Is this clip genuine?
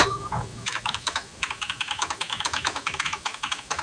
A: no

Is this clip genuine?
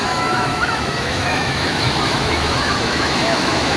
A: no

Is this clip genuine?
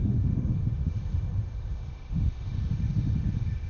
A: no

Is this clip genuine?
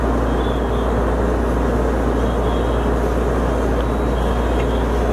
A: yes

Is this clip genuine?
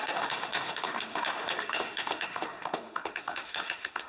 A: no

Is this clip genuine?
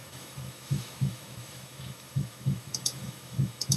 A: no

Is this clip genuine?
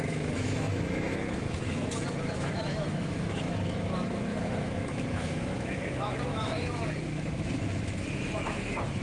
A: no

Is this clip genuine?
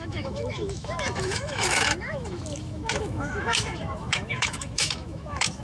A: no